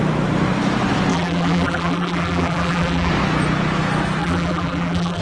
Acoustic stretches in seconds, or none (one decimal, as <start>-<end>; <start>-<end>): 0.0-1.1; 3.1-4.2